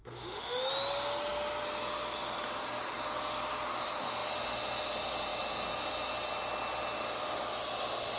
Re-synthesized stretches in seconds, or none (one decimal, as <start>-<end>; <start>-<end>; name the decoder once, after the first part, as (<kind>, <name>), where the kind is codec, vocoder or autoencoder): 0.0-0.7 (autoencoder, DAC-VAE)